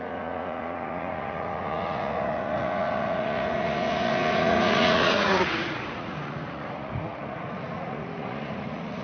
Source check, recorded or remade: remade